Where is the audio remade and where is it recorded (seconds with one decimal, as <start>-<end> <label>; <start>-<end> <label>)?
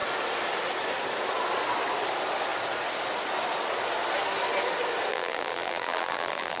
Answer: 0.0-5.1 recorded; 5.1-6.6 remade